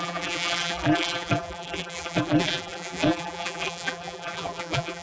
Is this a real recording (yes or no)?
no